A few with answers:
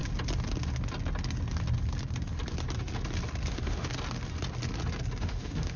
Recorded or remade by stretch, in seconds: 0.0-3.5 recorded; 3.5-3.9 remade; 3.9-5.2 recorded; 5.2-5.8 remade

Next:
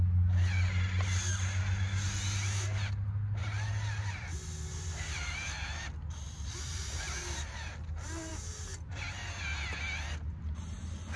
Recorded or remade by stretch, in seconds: 0.0-11.2 recorded

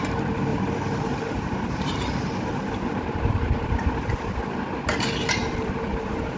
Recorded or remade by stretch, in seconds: 0.0-0.5 recorded; 0.5-4.3 remade; 4.3-5.4 recorded; 5.4-6.4 remade

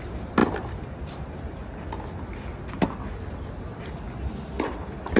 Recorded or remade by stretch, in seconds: 0.0-0.4 remade; 0.4-1.1 recorded; 1.1-1.6 remade; 1.6-4.7 recorded; 4.7-5.2 remade

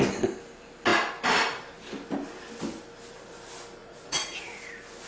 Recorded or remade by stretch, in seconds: 0.0-3.8 recorded; 3.8-4.6 remade; 4.6-5.1 recorded

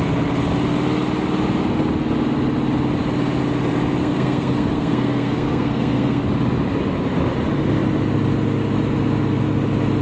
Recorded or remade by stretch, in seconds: 0.0-4.0 recorded; 4.0-6.2 remade; 6.2-10.0 recorded

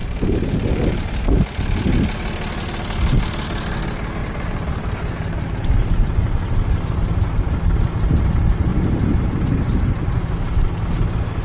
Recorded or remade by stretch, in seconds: 0.0-1.5 remade; 1.5-4.2 recorded; 4.2-7.4 remade; 7.4-8.7 recorded; 8.7-9.6 remade; 9.6-11.4 recorded